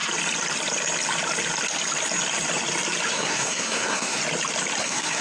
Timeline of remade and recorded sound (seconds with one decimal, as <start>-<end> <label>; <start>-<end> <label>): 0.0-3.1 recorded; 3.1-4.2 remade; 4.2-4.8 recorded; 4.8-5.2 remade

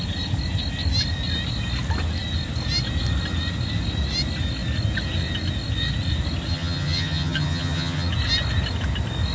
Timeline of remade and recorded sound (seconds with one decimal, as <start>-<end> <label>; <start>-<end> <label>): 0.0-6.5 recorded; 6.5-8.1 remade; 8.1-9.3 recorded